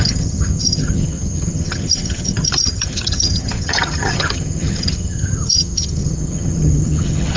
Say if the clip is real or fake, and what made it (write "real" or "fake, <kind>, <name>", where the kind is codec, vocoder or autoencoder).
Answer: fake, vocoder, HiFi-GAN